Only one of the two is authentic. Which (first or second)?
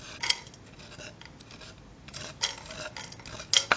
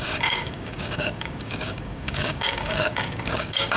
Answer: first